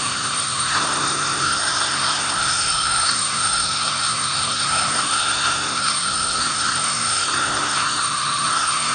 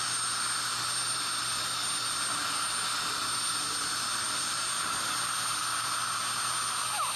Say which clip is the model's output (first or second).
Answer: first